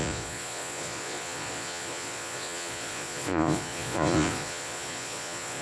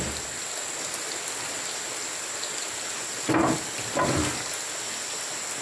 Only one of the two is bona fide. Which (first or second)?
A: second